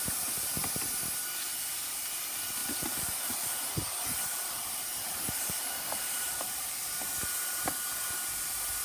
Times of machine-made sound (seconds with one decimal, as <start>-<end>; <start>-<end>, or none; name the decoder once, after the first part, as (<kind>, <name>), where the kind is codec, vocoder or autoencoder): 2.6-3.6 (vocoder, BigVGAN v2); 4.3-7.1